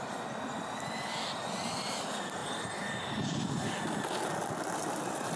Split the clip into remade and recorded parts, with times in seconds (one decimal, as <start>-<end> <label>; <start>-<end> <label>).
0.0-5.4 recorded